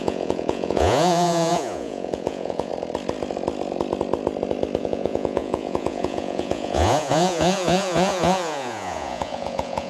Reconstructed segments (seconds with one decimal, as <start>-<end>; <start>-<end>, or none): 0.0-2.7; 4.8-9.9